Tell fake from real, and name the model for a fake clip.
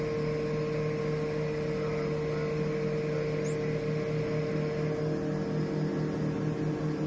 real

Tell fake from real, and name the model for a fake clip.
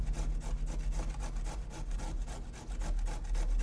real